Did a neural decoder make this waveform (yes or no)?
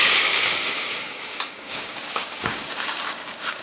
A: yes